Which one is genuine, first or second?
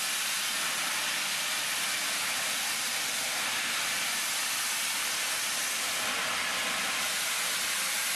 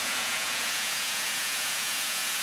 first